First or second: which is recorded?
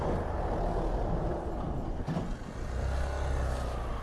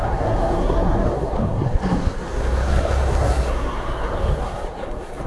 first